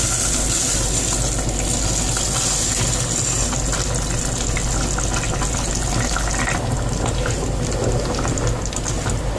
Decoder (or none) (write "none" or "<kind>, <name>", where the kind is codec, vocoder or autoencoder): none